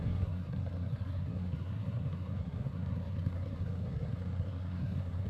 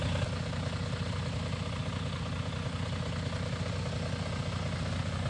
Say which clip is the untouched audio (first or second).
second